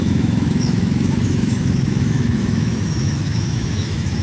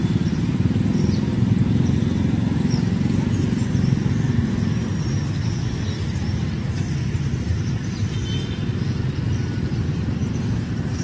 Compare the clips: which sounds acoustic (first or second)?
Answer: second